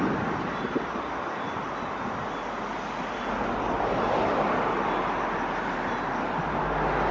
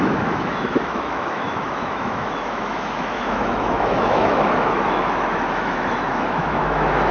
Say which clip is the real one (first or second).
first